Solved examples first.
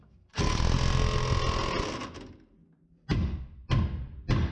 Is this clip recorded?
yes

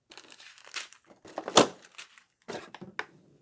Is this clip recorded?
yes